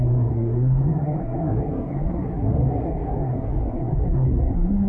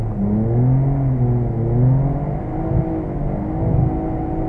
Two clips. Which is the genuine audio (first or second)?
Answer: second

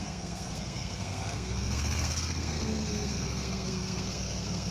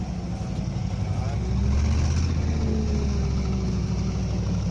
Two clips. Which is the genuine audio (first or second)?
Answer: second